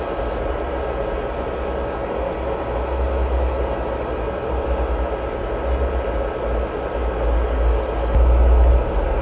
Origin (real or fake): real